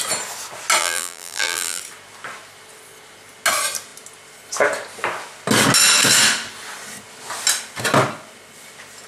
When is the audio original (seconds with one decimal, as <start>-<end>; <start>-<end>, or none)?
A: 0.0-0.8; 1.8-9.1